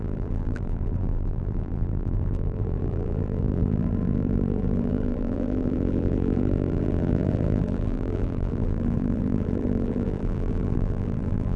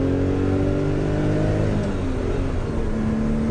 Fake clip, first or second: first